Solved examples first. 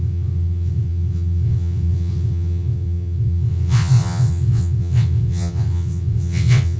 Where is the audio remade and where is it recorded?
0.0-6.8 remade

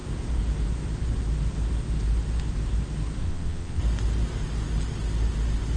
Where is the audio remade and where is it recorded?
0.0-3.2 recorded; 3.2-3.8 remade; 3.8-5.8 recorded

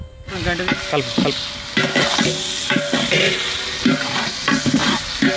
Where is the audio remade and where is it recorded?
0.0-5.4 recorded

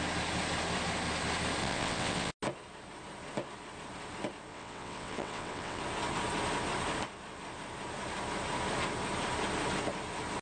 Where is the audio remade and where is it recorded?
0.0-1.6 recorded; 1.6-2.3 remade; 2.3-4.5 recorded; 4.5-5.8 remade; 5.8-10.4 recorded